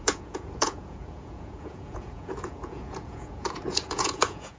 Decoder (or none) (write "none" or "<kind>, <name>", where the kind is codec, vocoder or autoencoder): vocoder, Vocos